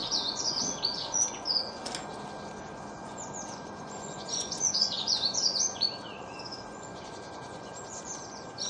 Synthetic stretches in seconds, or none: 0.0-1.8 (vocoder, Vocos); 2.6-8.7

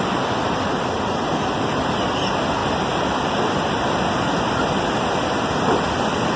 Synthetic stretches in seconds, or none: 2.6-4.2 (vocoder, BigVGAN v2)

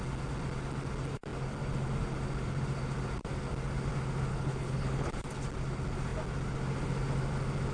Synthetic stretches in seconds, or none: 4.3-5.1 (codec, HILCodec)

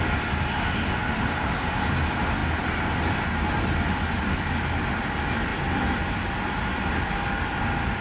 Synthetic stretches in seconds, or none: none

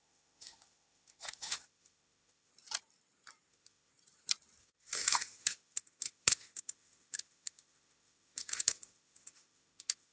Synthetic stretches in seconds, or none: 0.0-2.5 (autoencoder, DAC-VAE); 3.5-3.9; 4.6-10.1

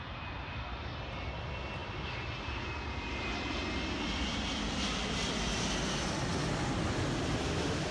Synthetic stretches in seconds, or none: none